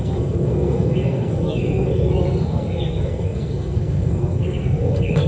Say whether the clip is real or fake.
fake